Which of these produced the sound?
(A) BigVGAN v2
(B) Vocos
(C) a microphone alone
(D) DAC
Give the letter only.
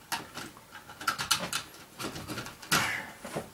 C